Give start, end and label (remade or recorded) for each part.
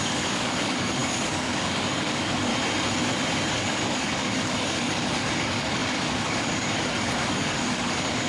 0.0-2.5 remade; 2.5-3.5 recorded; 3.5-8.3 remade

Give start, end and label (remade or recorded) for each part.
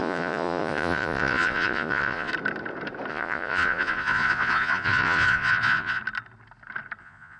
0.0-2.3 remade; 2.3-3.1 recorded; 3.1-6.0 remade; 6.0-7.0 recorded; 7.0-7.4 remade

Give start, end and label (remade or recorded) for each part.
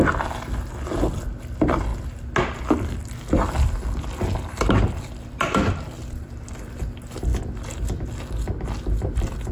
0.0-9.5 recorded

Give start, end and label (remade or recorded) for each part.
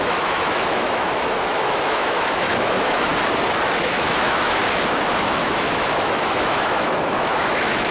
0.0-3.1 remade; 3.1-3.8 recorded; 3.8-4.6 remade; 4.6-5.2 recorded; 5.2-7.9 remade